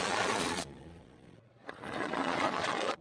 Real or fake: fake